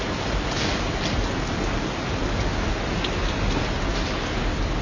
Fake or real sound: real